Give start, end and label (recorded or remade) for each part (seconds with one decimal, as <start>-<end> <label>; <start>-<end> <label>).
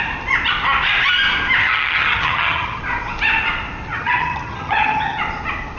0.0-1.6 recorded; 1.6-2.8 remade; 2.8-3.9 recorded; 3.9-5.2 remade; 5.2-5.8 recorded